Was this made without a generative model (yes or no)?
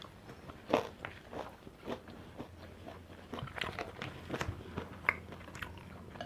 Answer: yes